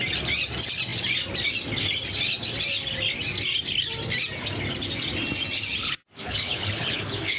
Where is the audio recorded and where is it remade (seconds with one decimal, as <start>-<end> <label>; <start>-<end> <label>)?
0.0-5.8 recorded; 5.8-7.4 remade